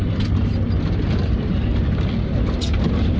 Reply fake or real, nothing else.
real